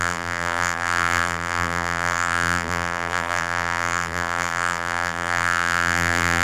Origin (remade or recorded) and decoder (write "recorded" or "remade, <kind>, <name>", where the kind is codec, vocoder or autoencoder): remade, vocoder, BigVGAN v2